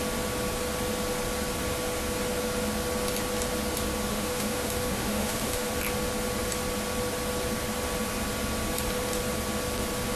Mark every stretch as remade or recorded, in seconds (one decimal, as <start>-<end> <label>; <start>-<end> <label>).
0.0-4.1 recorded; 4.1-5.7 remade; 5.7-10.2 recorded